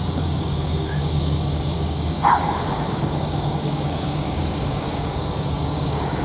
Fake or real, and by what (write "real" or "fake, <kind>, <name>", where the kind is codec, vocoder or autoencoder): fake, codec, DAC